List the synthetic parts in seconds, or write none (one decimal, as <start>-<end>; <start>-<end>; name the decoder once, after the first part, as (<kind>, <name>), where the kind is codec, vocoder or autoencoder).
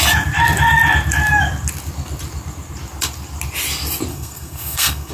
4.1-5.1 (codec, SNAC)